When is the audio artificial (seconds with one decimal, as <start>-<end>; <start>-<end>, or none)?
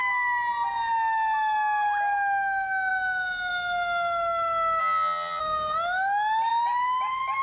4.8-5.4